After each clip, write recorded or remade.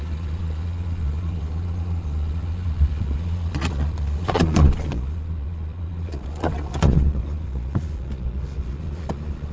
remade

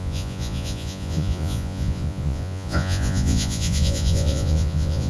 remade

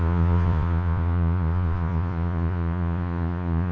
remade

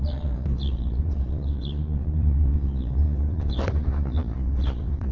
remade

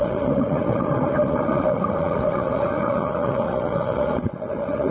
remade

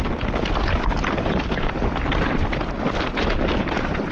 recorded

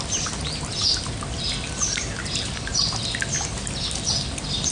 recorded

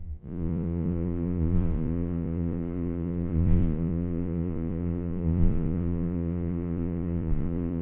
remade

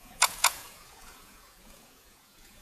remade